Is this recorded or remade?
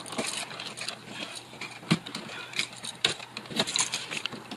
recorded